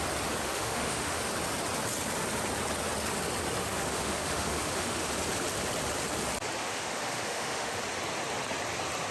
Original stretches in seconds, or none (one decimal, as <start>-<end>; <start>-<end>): 0.0-0.4; 1.2-3.6; 5.1-6.6; 7.8-9.1